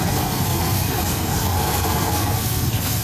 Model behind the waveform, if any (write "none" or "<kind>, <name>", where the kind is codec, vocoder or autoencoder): codec, SNAC